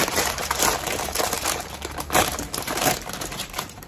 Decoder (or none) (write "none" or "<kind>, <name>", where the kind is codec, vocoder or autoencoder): vocoder, BigVGAN v2